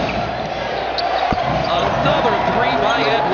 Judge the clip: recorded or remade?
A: remade